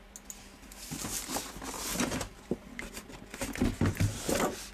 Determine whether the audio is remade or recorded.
recorded